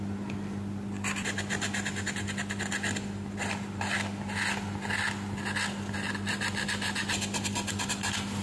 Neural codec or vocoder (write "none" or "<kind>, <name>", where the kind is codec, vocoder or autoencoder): none